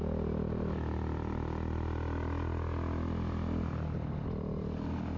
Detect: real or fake real